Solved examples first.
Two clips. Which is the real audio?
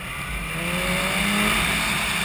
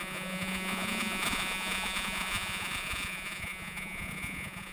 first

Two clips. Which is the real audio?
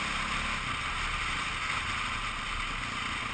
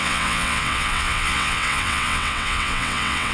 first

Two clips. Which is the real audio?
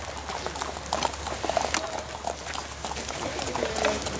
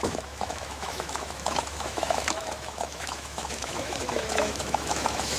first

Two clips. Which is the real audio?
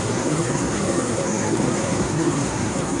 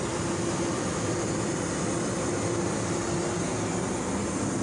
second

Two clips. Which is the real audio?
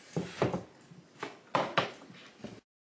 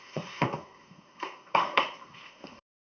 first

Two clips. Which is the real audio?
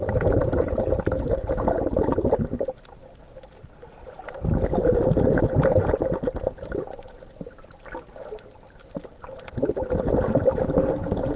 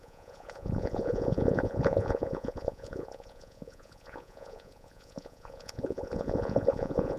first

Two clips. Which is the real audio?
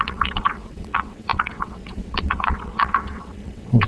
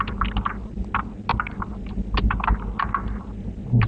second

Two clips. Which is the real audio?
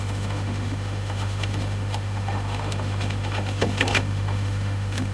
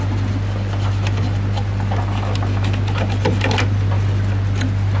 second